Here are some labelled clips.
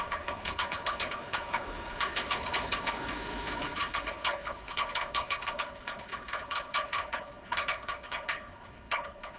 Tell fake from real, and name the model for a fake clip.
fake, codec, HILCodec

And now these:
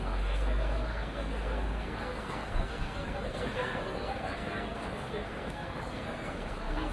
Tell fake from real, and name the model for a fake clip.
fake, codec, SNAC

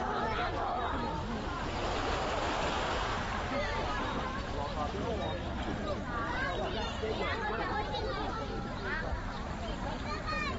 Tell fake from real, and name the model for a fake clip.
fake, vocoder, BigVGAN v2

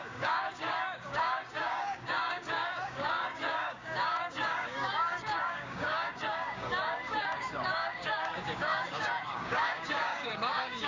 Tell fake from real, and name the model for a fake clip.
fake, codec, DAC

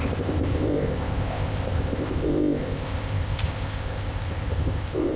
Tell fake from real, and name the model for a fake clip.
fake, codec, ZipCodec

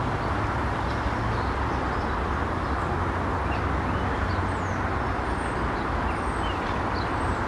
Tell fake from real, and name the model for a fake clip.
real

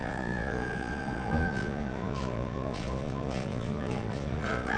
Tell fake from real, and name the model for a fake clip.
fake, vocoder, Vocos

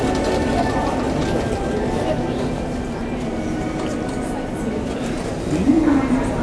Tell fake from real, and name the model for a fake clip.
real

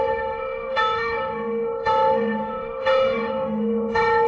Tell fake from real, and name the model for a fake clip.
fake, autoencoder, DAC-VAE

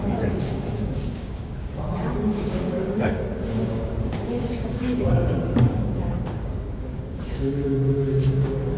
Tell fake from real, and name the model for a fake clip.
fake, codec, DAC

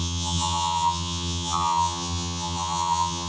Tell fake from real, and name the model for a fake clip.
fake, vocoder, HiFi-GAN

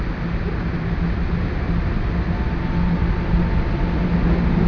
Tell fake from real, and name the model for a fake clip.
real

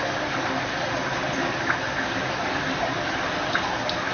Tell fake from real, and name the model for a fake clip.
real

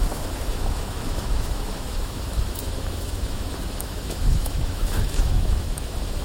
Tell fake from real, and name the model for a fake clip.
fake, autoencoder, DAC-VAE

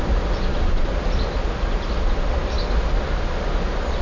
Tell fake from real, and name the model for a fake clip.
real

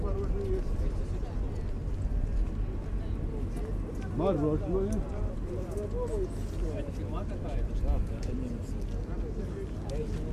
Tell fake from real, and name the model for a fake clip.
real